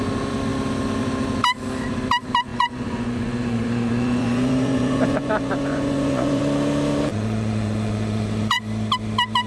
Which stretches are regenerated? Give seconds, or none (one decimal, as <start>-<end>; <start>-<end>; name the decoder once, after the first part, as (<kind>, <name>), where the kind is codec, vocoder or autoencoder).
2.5-6.4 (vocoder, Vocos); 7.1-8.6